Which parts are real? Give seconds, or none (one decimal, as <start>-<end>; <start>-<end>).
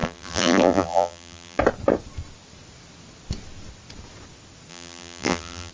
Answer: 1.6-4.7